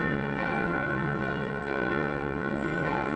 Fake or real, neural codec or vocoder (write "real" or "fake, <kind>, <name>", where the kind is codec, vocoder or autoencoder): fake, vocoder, WaveNeXt